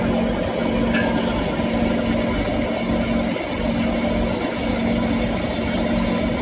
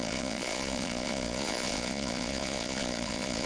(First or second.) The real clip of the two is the first